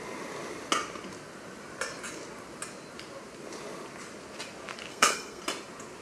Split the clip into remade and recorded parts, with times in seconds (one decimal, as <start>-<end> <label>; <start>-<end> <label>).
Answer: 0.0-4.9 recorded; 4.9-5.4 remade; 5.4-6.0 recorded